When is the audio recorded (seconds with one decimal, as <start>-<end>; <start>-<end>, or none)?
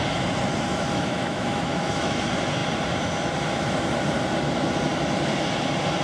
0.0-0.7; 2.2-6.0